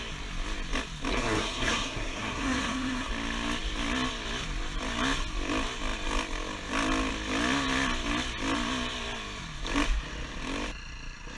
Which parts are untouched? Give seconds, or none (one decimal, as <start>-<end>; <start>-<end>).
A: 0.0-1.1; 3.1-11.4